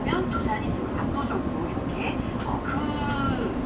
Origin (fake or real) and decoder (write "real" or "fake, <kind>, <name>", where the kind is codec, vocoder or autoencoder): real